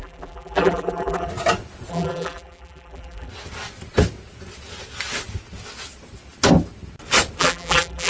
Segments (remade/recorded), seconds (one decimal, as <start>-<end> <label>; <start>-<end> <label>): 0.0-1.3 remade; 1.3-1.9 recorded; 1.9-3.3 remade; 3.3-7.4 recorded; 7.4-8.1 remade